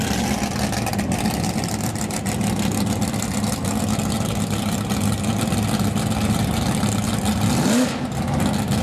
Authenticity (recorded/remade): recorded